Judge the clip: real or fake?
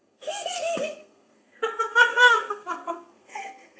fake